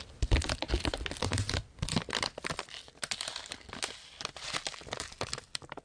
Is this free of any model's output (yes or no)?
yes